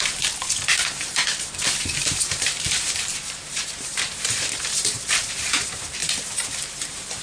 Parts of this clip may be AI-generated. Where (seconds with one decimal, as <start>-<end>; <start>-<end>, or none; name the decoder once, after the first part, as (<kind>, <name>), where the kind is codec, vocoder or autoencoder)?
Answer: 0.0-7.2 (vocoder, BigVGAN v2)